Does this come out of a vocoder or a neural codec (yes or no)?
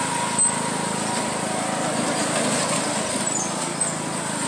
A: no